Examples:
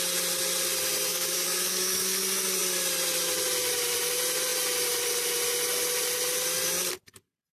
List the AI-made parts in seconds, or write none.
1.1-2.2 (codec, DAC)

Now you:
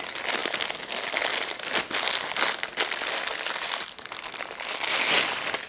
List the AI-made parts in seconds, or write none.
none

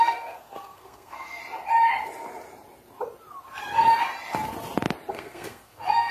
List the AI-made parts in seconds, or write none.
0.0-1.4 (codec, SNAC); 5.1-6.1

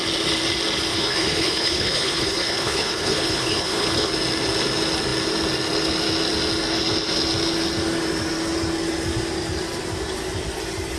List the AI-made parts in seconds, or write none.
0.9-4.1 (codec, HILCodec)

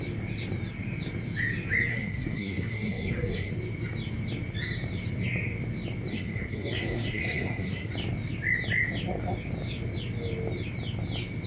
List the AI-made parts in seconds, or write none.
1.9-3.5 (codec, SNAC); 6.1-7.9

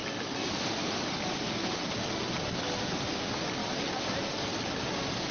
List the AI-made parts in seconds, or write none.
none

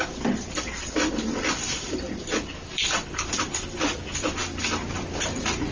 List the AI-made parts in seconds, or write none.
0.0-4.4 (vocoder, BigVGAN v2); 5.2-5.7

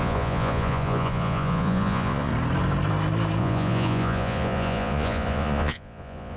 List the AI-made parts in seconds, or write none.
0.0-2.3 (vocoder, Vocos); 3.4-6.4